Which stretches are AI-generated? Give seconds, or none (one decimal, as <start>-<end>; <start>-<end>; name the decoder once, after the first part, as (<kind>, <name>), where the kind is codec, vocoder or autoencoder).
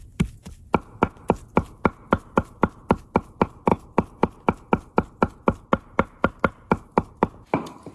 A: none